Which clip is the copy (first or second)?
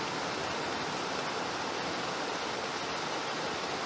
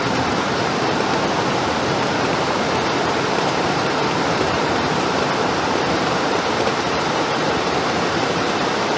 second